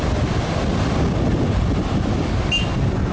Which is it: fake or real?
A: real